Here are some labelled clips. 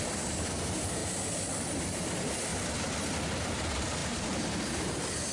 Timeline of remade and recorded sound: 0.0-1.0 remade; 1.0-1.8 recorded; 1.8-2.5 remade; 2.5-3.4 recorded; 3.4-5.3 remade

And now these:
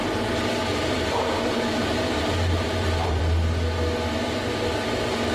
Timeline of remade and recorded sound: 0.0-3.2 remade; 3.2-5.3 recorded

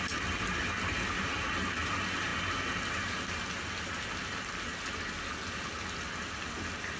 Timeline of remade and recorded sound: 0.0-7.0 recorded

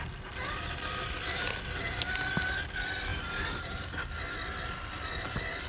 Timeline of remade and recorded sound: 0.0-3.1 recorded; 3.1-4.0 remade; 4.0-5.7 recorded

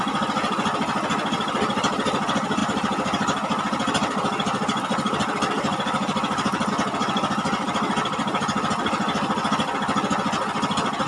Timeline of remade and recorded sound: 0.0-2.6 recorded; 2.6-6.7 remade; 6.7-11.1 recorded

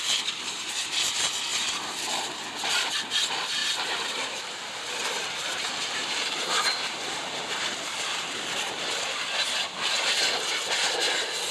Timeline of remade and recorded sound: 0.0-3.6 recorded; 3.6-8.8 remade; 8.8-11.5 recorded